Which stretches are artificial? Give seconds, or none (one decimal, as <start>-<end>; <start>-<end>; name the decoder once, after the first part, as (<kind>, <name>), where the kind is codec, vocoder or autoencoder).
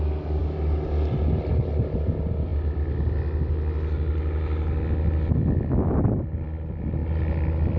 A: none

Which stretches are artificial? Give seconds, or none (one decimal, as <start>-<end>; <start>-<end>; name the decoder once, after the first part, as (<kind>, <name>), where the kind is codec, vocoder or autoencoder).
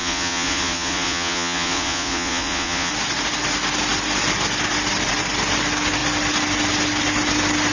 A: 0.0-2.9 (vocoder, Vocos)